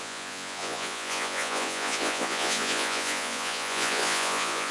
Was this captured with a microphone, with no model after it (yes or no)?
no